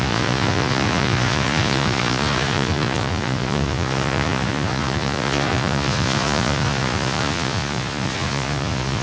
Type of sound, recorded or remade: remade